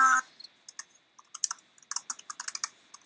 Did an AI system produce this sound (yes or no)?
no